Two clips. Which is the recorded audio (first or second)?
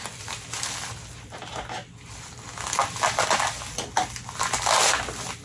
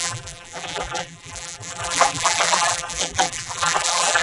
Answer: first